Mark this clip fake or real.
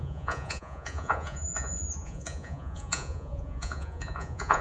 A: fake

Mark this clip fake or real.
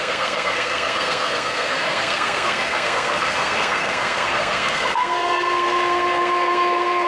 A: fake